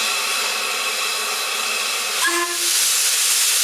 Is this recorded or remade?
recorded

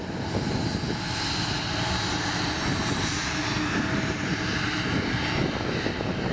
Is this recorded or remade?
recorded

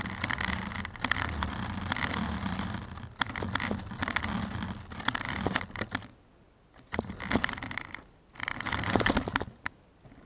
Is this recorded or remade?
recorded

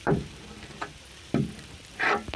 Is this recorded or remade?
remade